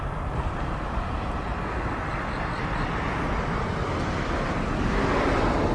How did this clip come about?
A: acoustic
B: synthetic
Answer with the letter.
A